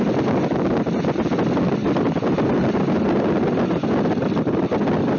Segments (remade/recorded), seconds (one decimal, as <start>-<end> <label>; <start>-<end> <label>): 0.0-1.8 recorded; 1.8-3.2 remade; 3.2-5.2 recorded